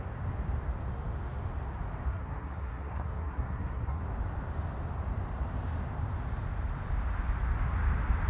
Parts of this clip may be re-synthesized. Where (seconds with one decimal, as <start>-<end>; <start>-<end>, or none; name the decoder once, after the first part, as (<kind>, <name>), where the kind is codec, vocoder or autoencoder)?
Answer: 2.1-4.0 (codec, SNAC)